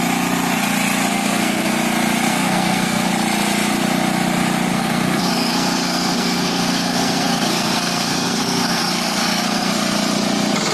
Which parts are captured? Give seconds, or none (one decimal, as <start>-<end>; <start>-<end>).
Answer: 0.0-1.1; 1.7-2.3; 3.1-4.7; 9.7-10.7